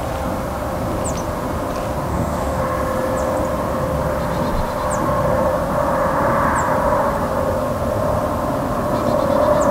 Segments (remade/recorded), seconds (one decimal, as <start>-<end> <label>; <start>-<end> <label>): 0.0-2.1 recorded; 2.1-2.6 remade; 2.6-9.7 recorded